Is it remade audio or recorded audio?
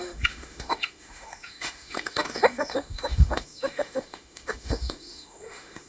remade